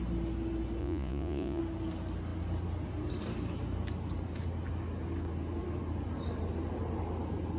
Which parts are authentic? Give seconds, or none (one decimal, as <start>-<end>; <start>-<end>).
0.0-0.8; 1.6-7.6